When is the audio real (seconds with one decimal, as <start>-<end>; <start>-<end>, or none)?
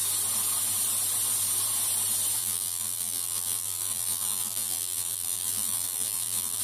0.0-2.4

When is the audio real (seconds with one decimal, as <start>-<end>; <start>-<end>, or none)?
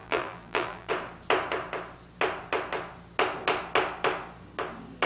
0.9-5.1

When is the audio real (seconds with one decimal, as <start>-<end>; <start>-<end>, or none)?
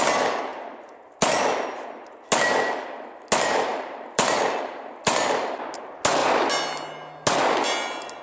0.0-3.7; 4.4-8.2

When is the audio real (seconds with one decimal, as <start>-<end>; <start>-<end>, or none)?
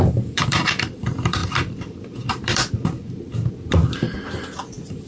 none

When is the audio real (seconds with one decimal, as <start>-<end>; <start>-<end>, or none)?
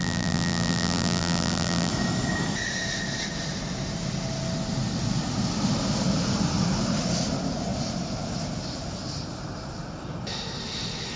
1.9-11.2